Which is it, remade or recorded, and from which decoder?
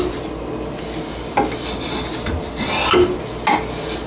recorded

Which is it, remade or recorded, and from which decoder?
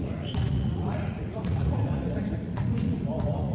remade, vocoder, Vocos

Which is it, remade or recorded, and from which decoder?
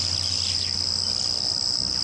recorded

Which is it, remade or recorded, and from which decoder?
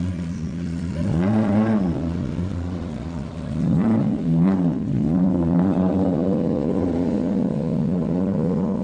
remade, vocoder, Vocos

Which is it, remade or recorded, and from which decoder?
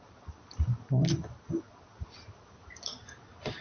recorded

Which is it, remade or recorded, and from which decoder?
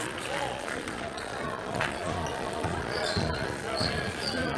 remade, vocoder, Vocos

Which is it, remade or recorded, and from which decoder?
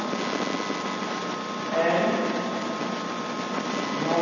recorded